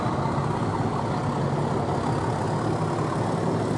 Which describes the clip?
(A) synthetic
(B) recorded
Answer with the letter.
B